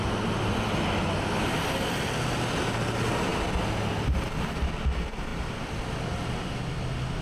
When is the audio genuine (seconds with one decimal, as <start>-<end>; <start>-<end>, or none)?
0.0-7.2